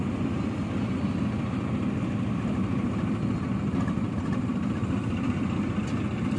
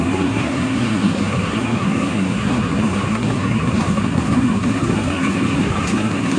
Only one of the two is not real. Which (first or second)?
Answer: second